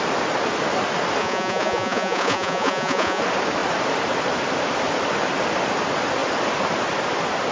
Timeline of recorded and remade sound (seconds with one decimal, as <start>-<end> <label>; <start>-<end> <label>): 0.0-1.2 recorded; 1.2-3.2 remade; 3.2-7.5 recorded